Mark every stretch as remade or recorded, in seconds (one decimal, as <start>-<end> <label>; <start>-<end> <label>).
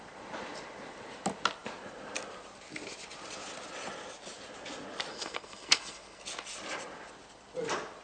0.0-5.1 recorded; 5.1-6.2 remade; 6.2-8.0 recorded